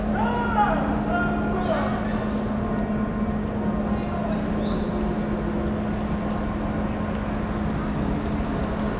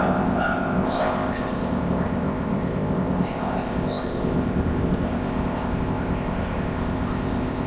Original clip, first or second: first